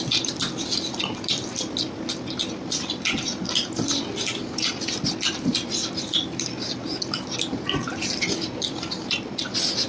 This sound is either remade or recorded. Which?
recorded